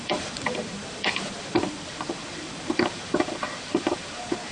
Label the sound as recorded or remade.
remade